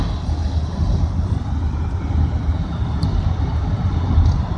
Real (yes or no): yes